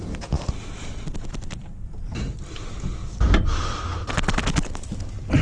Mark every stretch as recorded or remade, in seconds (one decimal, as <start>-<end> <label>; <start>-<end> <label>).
0.0-5.4 remade